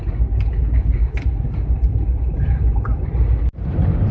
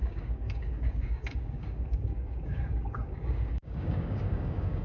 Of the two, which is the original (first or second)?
first